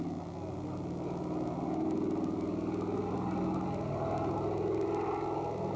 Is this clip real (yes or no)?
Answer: yes